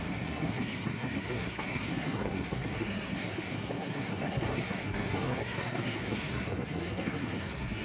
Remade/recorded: remade